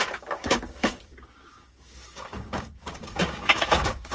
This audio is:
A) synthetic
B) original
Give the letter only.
A